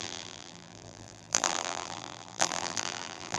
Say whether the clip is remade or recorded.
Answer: remade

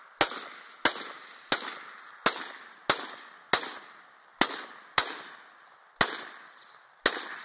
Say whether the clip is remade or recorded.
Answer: recorded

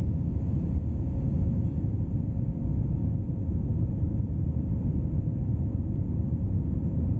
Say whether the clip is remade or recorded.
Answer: recorded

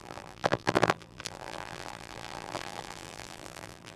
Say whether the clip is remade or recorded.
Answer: remade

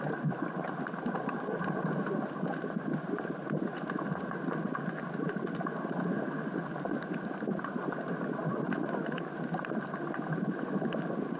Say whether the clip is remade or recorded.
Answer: recorded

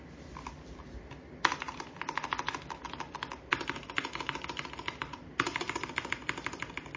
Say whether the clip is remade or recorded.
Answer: recorded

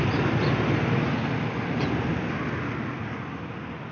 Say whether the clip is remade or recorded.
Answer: recorded